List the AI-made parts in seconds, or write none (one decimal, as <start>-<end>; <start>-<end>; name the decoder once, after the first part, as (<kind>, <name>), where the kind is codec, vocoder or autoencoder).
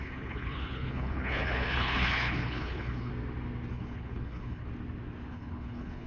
0.0-3.1 (codec, HILCodec); 3.7-4.7; 5.3-6.1